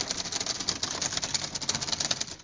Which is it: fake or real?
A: real